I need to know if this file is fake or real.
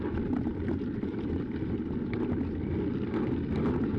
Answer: real